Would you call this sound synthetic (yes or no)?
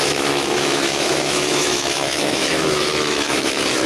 yes